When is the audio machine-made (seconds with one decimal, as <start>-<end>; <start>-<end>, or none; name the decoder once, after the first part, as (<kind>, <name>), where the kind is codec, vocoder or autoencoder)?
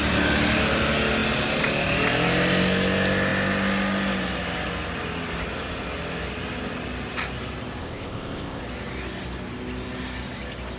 7.8-8.6 (codec, ZipCodec)